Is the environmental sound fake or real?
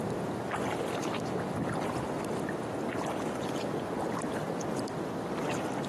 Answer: real